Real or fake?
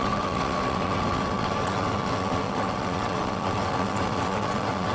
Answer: fake